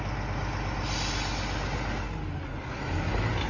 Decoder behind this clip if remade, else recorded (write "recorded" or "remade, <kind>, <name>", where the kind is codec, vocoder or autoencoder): recorded